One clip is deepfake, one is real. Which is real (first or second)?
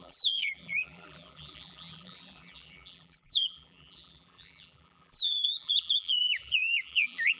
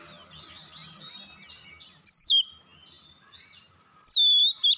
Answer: second